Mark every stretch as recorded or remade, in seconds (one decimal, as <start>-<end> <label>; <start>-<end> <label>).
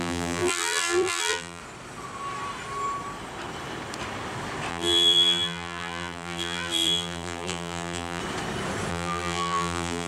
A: 0.0-1.6 remade; 1.6-4.7 recorded; 4.7-8.2 remade; 8.2-8.9 recorded; 8.9-10.1 remade